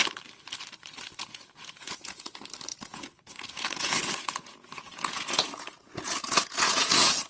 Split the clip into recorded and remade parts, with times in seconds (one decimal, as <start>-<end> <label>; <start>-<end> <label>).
0.0-1.2 recorded; 1.2-2.3 remade; 2.3-2.7 recorded; 2.7-7.3 remade